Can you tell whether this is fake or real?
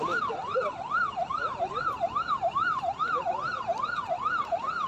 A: real